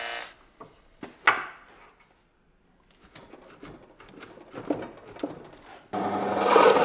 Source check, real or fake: real